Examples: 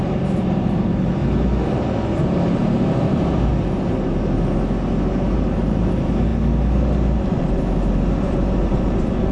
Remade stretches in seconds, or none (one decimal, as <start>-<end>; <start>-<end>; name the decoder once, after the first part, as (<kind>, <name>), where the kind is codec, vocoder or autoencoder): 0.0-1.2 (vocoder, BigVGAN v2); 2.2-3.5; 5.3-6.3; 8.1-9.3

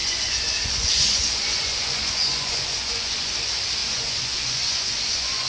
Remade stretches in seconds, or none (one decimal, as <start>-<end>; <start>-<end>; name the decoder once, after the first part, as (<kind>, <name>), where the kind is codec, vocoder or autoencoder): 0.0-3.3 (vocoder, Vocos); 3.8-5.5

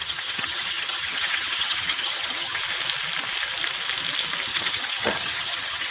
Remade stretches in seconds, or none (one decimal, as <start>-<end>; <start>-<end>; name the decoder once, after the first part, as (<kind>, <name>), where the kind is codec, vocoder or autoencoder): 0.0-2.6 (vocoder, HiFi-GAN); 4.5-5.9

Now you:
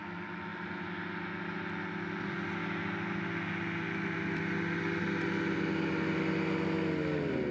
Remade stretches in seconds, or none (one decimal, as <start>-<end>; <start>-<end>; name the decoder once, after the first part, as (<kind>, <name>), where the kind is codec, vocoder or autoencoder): none

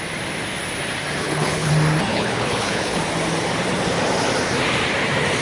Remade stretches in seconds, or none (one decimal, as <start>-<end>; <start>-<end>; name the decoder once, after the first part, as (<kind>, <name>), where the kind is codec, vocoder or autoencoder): 1.2-1.7 (codec, HILCodec); 2.1-3.0

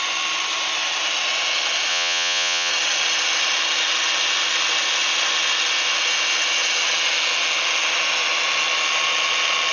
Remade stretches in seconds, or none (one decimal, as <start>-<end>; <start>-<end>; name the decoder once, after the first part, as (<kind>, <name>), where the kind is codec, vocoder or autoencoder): 1.9-2.7 (vocoder, Vocos)

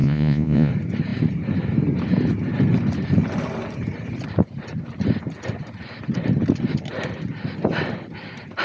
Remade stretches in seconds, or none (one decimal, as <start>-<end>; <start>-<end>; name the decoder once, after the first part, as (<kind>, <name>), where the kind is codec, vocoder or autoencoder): 0.0-0.7 (vocoder, Vocos)

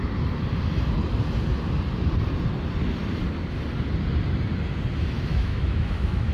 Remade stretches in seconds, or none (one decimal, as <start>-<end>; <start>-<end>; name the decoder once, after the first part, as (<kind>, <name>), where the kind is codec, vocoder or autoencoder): 5.3-6.3 (autoencoder, DAC-VAE)